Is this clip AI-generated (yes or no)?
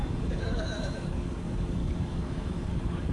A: yes